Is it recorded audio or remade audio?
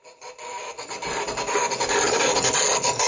recorded